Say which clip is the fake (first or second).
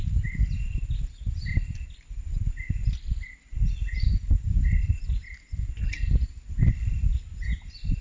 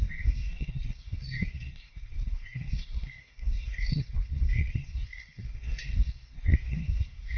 second